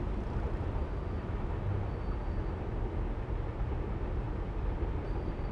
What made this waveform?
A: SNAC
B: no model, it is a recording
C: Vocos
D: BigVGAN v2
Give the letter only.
B